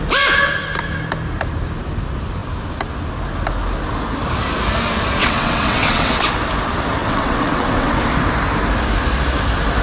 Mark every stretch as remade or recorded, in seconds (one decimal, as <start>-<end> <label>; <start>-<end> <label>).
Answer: 0.0-5.2 recorded; 5.2-6.2 remade; 6.2-7.0 recorded; 7.0-8.0 remade; 8.0-9.8 recorded